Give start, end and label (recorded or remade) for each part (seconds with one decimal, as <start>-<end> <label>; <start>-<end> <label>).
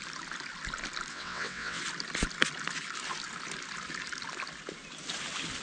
0.0-1.1 recorded; 1.1-1.8 remade; 1.8-5.6 recorded